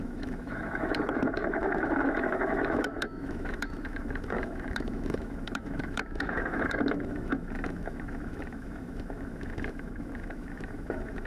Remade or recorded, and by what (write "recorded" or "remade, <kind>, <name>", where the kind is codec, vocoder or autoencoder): remade, autoencoder, DAC-VAE